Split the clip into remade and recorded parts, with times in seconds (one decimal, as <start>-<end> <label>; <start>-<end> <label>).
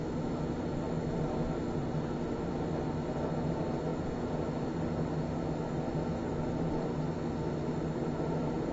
0.0-3.9 recorded; 3.9-4.4 remade; 4.4-8.7 recorded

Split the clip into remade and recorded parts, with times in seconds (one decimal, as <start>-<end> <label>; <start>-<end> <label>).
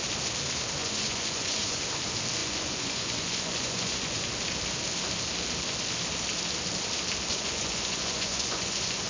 0.0-0.8 recorded; 0.8-1.8 remade; 1.8-2.4 recorded; 2.4-4.2 remade; 4.2-7.3 recorded; 7.3-9.1 remade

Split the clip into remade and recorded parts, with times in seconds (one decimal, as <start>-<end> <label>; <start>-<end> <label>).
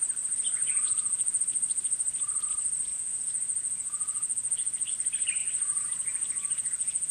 0.0-0.6 recorded; 0.6-1.4 remade; 1.4-2.9 recorded; 2.9-4.9 remade; 4.9-5.4 recorded; 5.4-7.1 remade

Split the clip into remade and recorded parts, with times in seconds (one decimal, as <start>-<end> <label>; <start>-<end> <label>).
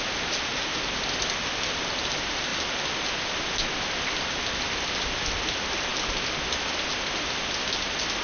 0.0-8.2 recorded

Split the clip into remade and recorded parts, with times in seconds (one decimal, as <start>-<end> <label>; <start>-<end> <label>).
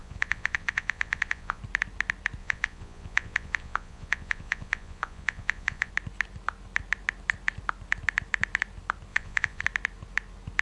0.0-1.6 remade; 1.6-2.4 recorded; 2.4-5.9 remade; 5.9-9.1 recorded; 9.1-9.6 remade; 9.6-10.6 recorded